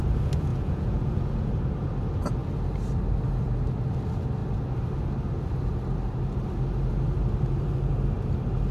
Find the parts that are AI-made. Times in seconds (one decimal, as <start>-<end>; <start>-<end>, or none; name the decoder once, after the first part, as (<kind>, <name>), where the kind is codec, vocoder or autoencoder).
0.5-1.5 (vocoder, Vocos)